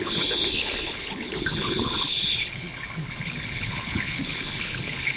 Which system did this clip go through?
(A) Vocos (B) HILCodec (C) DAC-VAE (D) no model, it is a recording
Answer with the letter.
B